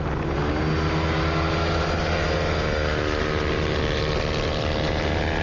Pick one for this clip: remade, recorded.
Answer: recorded